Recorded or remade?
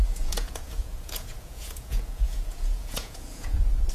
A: remade